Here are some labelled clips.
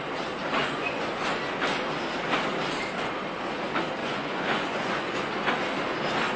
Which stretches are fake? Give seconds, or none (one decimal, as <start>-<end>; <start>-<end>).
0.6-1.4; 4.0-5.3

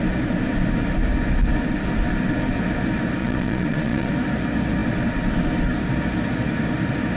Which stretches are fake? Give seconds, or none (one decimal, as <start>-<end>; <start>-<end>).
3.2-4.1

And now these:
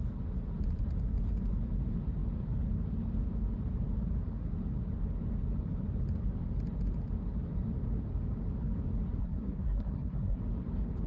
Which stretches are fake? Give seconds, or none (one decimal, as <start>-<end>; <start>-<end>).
9.2-10.4

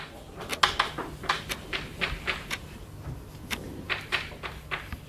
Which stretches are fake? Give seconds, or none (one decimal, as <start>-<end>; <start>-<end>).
0.0-0.5; 1.3-5.1